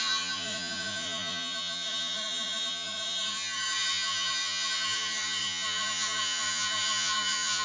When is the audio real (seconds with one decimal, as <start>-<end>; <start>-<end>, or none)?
none

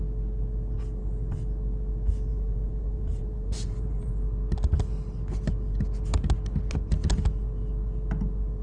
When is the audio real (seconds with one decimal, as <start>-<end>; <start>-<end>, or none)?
0.0-2.3; 4.1-8.6

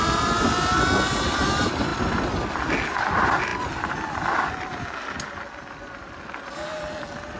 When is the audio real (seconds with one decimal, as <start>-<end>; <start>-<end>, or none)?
0.0-7.4

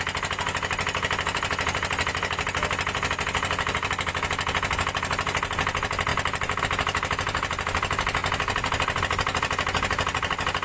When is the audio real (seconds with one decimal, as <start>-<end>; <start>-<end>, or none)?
0.0-10.6

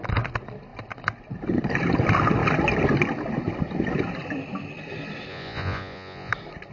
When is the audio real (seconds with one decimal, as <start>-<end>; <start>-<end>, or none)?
0.0-5.3; 6.3-6.7

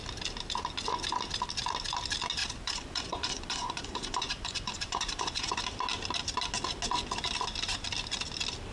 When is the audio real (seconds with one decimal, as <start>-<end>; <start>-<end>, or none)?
0.0-2.4; 5.6-8.7